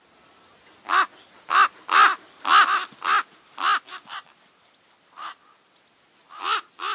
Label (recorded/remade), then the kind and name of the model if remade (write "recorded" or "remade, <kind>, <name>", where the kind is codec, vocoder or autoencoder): recorded